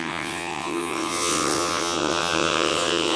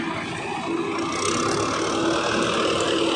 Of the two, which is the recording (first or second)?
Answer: second